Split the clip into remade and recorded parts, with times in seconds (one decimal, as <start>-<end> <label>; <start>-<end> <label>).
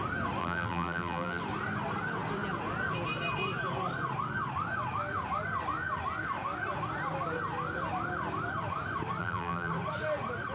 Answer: 0.0-0.4 recorded; 0.4-1.4 remade; 1.4-9.2 recorded; 9.2-9.7 remade; 9.7-10.5 recorded